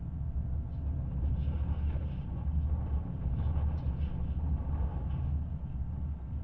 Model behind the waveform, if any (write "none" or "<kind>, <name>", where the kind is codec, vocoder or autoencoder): none